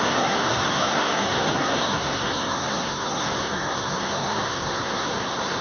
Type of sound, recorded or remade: remade